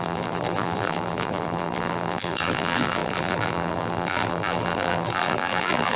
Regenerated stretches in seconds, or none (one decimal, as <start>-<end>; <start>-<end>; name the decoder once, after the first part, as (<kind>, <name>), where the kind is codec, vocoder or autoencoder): 0.0-6.0 (vocoder, BigVGAN v2)